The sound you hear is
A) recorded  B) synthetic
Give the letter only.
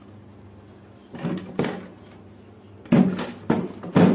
A